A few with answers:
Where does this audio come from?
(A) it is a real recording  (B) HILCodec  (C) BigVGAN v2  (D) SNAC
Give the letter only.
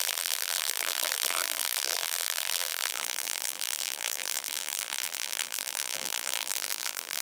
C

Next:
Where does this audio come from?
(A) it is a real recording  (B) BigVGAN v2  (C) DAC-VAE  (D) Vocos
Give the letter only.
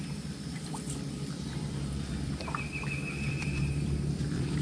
B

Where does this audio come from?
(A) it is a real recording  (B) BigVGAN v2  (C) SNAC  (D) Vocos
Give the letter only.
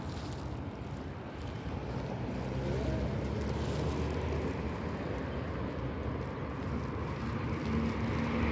A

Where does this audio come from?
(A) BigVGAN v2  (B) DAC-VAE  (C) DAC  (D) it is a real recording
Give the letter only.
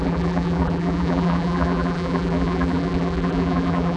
A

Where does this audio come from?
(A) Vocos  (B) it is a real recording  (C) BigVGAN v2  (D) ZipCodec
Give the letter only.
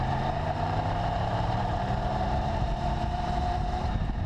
C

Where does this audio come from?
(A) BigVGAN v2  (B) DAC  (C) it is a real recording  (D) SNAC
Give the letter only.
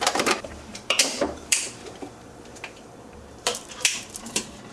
A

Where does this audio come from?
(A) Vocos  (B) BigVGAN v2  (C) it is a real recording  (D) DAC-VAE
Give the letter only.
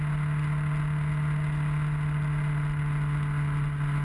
C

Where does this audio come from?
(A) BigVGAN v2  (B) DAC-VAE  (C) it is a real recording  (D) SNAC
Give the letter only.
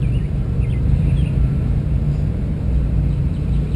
A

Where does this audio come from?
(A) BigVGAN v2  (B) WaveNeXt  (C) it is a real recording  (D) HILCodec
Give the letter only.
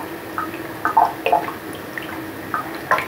C